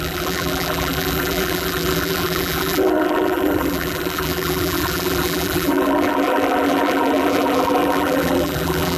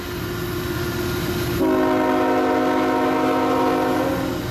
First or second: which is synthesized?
first